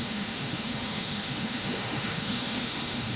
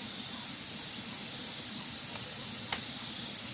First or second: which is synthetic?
first